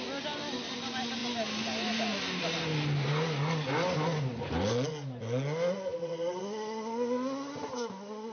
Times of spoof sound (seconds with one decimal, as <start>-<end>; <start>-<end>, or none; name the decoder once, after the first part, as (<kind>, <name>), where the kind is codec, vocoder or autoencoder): 5.9-6.4 (vocoder, BigVGAN v2)